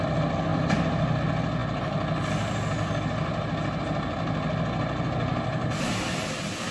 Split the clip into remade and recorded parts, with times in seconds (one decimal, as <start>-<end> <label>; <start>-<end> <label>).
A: 0.0-6.7 recorded

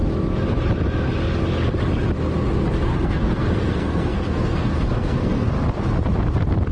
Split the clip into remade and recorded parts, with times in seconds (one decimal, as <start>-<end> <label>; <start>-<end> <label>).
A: 0.0-2.9 recorded; 2.9-5.5 remade; 5.5-6.7 recorded

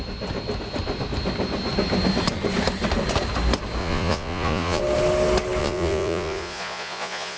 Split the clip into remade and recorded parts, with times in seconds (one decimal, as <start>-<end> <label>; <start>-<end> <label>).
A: 0.0-3.8 recorded; 3.8-4.8 remade; 4.8-5.6 recorded; 5.6-7.4 remade